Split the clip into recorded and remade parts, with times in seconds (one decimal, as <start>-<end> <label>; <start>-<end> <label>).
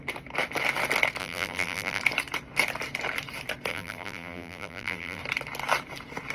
0.0-1.2 recorded; 1.2-2.0 remade; 2.0-3.7 recorded; 3.7-5.2 remade; 5.2-6.3 recorded